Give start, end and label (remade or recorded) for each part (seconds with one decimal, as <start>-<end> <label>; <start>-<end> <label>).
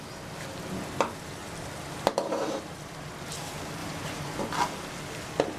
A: 0.0-1.4 recorded; 1.4-3.1 remade; 3.1-3.8 recorded; 3.8-4.4 remade; 4.4-5.6 recorded